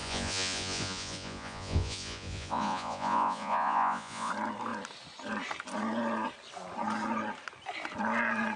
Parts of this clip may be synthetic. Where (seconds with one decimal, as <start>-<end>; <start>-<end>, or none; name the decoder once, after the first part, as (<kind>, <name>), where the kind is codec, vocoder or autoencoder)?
0.0-4.3 (vocoder, Vocos)